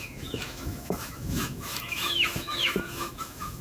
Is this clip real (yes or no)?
no